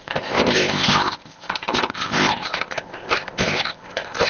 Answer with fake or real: fake